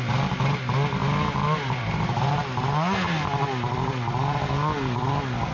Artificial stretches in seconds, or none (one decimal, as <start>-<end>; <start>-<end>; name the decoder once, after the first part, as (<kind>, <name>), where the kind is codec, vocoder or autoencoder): none

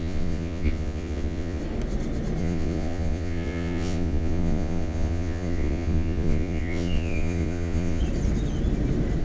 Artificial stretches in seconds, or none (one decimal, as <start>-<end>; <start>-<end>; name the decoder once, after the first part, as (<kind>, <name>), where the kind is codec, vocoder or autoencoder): 0.0-1.6 (vocoder, Vocos); 2.4-8.0

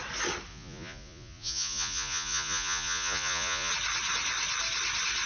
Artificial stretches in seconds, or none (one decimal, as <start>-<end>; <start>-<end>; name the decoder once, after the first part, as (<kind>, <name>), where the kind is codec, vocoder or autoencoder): 0.5-3.7 (vocoder, Vocos)

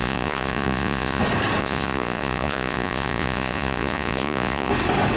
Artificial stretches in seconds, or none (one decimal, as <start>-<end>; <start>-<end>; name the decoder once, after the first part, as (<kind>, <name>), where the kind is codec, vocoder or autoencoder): 0.0-1.2 (vocoder, Vocos); 1.6-4.7